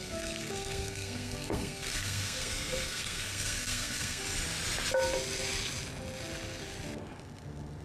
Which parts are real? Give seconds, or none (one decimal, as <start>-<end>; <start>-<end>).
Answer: 4.2-7.8